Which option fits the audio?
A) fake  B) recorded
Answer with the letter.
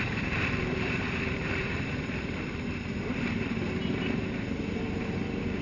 A